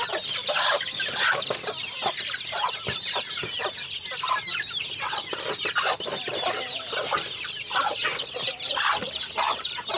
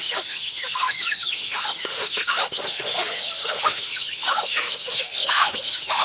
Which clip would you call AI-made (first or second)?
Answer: second